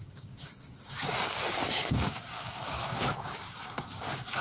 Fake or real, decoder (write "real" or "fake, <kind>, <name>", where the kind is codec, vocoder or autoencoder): fake, codec, DAC